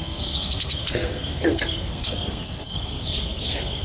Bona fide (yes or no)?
no